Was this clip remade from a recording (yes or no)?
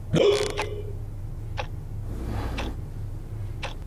no